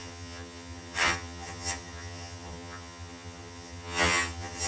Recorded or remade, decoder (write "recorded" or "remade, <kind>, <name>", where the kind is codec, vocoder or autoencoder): remade, vocoder, HiFi-GAN